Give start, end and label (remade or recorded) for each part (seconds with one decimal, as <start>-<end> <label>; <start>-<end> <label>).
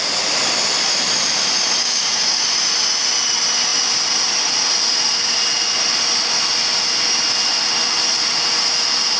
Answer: 0.0-1.8 recorded; 1.8-2.4 remade; 2.4-9.2 recorded